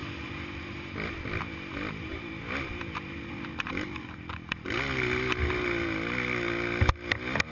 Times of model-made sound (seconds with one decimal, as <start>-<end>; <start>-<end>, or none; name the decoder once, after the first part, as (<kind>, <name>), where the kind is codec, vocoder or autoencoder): 0.0-1.4 (vocoder, BigVGAN v2); 2.1-5.5